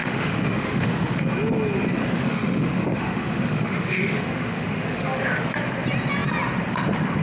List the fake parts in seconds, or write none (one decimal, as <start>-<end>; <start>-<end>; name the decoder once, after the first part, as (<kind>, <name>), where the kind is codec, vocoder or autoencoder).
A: 0.0-1.2 (autoencoder, DAC-VAE); 2.0-5.5

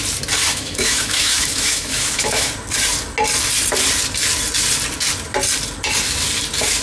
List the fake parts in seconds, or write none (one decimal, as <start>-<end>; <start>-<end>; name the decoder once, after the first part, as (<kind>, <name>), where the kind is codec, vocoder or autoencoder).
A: 0.5-2.5 (autoencoder, DAC-VAE)